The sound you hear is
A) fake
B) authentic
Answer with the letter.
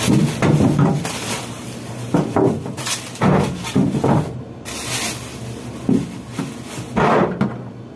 B